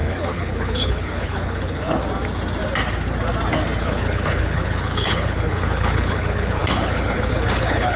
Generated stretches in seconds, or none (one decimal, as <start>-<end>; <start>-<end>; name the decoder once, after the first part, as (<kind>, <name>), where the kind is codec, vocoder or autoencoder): 0.0-2.0 (codec, HILCodec); 3.8-8.0